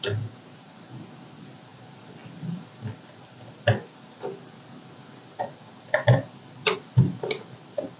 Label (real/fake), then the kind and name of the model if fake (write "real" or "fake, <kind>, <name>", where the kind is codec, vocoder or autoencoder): real